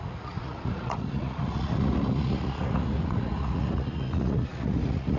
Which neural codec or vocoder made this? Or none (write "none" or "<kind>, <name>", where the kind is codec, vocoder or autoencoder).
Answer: vocoder, Vocos